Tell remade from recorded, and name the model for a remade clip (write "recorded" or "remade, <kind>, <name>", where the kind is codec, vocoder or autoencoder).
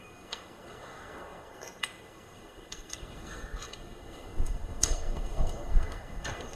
remade, codec, SNAC